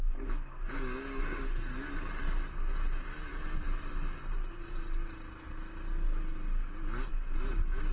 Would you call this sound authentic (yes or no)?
yes